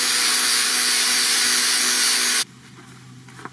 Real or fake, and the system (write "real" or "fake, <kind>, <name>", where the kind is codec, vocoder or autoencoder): real